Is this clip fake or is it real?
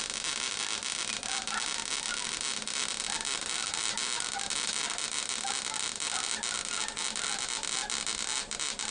real